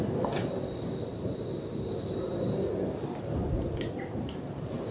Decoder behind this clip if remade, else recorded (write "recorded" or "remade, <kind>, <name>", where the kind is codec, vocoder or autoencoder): recorded